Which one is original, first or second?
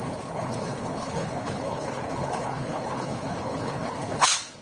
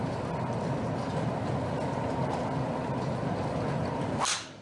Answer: second